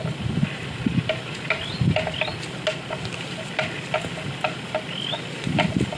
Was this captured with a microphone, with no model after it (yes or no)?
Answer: yes